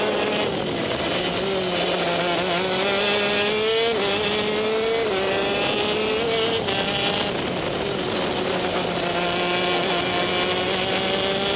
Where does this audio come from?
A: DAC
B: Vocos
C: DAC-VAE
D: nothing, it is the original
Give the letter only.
D